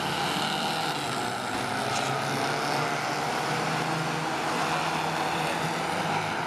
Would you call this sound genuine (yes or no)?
yes